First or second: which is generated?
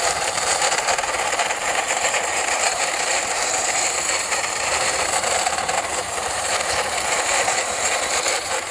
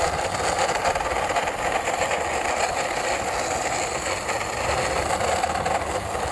first